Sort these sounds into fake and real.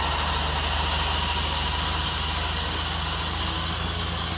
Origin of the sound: real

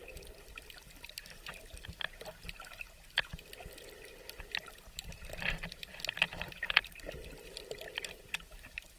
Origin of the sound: fake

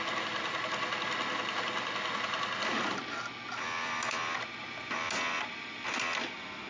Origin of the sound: real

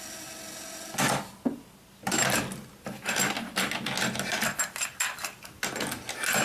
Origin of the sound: real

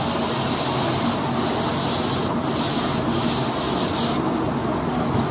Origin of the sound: real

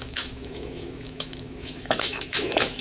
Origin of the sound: fake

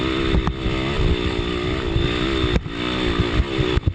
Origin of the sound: real